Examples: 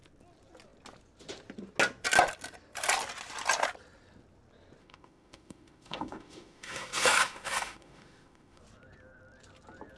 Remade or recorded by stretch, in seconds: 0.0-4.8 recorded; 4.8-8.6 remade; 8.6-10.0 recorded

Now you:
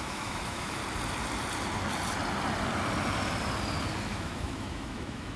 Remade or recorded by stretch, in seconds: 0.0-0.8 remade; 0.8-4.0 recorded; 4.0-5.4 remade

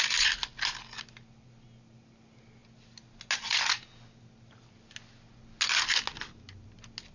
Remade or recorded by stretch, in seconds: 0.0-7.1 recorded

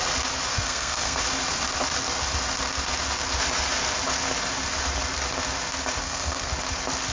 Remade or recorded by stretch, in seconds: 0.0-0.5 recorded; 0.5-1.2 remade; 1.2-6.0 recorded; 6.0-6.5 remade; 6.5-7.1 recorded